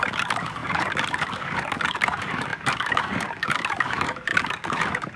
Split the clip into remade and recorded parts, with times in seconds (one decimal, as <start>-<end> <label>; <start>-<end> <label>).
0.0-5.2 remade

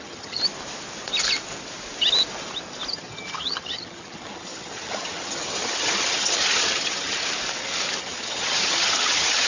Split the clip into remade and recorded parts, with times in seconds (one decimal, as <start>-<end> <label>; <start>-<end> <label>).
0.0-0.4 remade; 0.4-2.9 recorded; 2.9-7.2 remade; 7.2-8.0 recorded; 8.0-9.5 remade

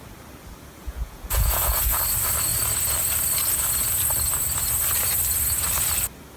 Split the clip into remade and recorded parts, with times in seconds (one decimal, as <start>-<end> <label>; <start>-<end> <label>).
0.0-0.8 recorded; 0.8-2.0 remade; 2.0-6.4 recorded

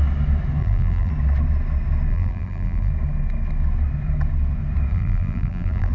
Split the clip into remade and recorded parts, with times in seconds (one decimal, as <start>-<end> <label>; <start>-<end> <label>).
0.0-0.6 recorded; 0.6-1.1 remade; 1.1-2.1 recorded; 2.1-2.9 remade; 2.9-4.9 recorded; 4.9-5.9 remade

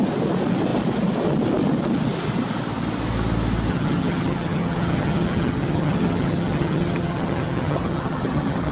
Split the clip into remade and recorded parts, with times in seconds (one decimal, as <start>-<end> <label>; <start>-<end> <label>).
0.0-3.7 recorded; 3.7-8.7 remade

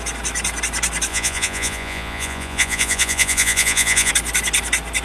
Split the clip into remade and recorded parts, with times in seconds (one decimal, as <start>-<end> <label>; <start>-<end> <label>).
0.0-1.1 recorded; 1.1-4.1 remade; 4.1-5.0 recorded